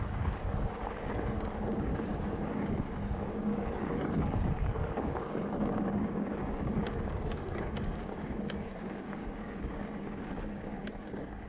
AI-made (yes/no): yes